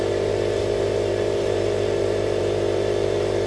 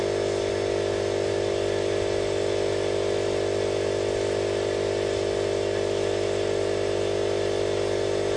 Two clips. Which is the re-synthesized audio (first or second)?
first